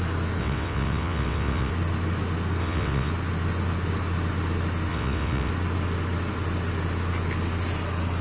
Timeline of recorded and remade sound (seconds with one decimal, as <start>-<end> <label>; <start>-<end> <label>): 0.0-0.4 recorded; 0.4-1.7 remade; 1.7-2.6 recorded; 2.6-3.1 remade; 3.1-4.9 recorded; 4.9-5.5 remade; 5.5-8.2 recorded